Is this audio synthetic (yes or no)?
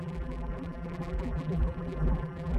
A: yes